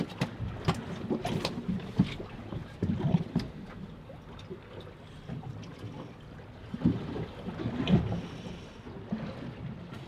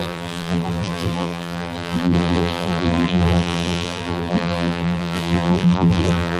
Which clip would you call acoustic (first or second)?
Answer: first